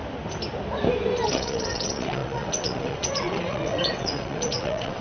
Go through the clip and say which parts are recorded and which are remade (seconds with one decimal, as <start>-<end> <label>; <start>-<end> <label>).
0.0-1.3 recorded; 1.3-5.0 remade